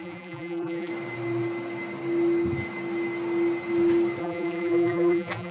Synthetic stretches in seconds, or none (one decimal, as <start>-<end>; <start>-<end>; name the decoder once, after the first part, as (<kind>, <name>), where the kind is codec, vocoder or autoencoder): 0.0-0.9 (vocoder, BigVGAN v2); 4.2-5.5